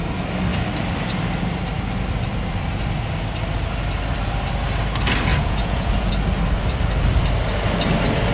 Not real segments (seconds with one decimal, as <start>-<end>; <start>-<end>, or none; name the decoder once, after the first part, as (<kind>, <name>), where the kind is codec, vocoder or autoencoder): 5.3-6.1 (vocoder, Vocos)